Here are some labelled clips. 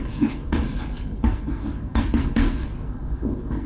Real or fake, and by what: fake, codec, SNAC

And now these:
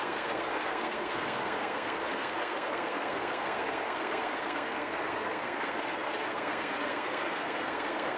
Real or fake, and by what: fake, codec, SNAC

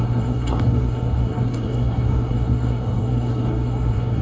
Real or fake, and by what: fake, codec, SNAC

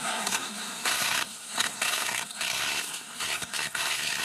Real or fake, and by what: fake, codec, SNAC